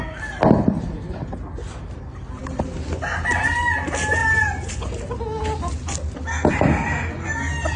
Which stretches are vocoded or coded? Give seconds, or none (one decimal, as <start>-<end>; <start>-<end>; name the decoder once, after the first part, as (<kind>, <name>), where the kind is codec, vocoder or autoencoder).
none

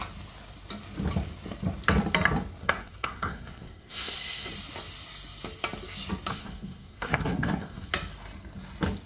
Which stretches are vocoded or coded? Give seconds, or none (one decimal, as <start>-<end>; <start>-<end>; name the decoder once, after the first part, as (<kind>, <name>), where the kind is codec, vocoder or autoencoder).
2.6-4.5 (codec, SNAC); 6.3-7.9